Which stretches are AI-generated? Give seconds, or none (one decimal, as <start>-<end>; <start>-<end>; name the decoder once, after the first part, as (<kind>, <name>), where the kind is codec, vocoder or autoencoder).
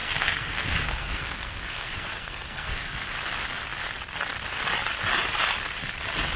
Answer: 0.0-3.1 (codec, SNAC)